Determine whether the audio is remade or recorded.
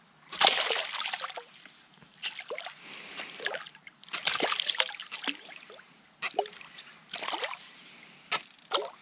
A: recorded